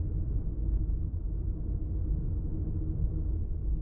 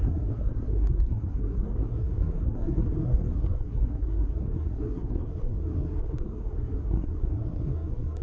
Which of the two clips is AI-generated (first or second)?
second